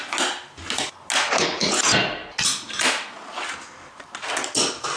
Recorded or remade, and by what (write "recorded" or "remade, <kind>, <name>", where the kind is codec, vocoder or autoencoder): recorded